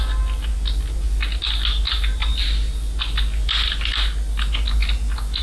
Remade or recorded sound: recorded